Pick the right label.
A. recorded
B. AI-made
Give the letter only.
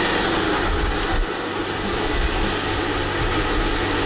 A